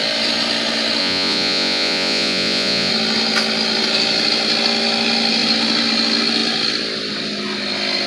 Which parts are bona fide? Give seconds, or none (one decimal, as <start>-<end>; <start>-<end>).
0.0-1.0; 2.9-8.1